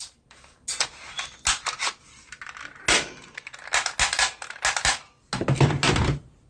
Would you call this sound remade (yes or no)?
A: no